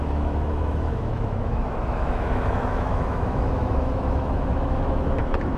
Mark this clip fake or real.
fake